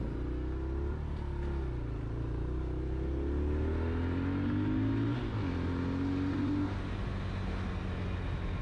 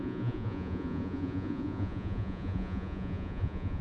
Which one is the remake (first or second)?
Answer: second